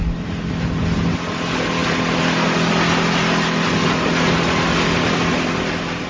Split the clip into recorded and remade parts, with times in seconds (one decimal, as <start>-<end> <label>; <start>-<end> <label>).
0.0-6.1 recorded